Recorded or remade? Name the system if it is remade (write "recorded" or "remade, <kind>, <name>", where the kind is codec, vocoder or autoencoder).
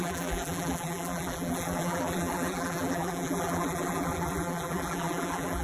remade, vocoder, BigVGAN v2